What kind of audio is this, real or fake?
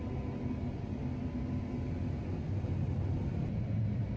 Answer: real